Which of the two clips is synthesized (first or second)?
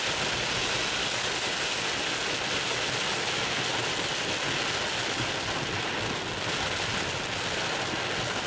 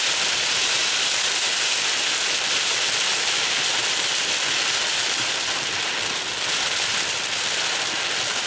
second